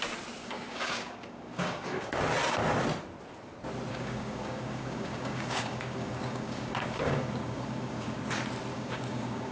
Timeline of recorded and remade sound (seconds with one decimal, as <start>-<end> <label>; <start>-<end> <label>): 0.0-0.4 recorded; 0.4-2.1 remade; 2.1-3.9 recorded; 3.9-8.2 remade; 8.2-8.7 recorded; 8.7-9.5 remade